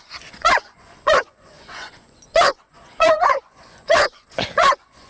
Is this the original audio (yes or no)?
no